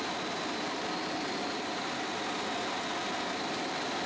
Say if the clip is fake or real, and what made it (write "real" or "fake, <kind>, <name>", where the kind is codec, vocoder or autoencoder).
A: real